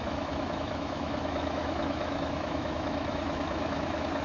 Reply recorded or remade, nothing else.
remade